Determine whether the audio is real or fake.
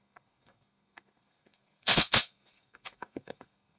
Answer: fake